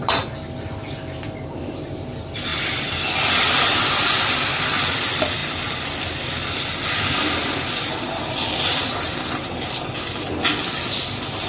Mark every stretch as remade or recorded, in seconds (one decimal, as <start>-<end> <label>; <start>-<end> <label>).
0.0-11.5 recorded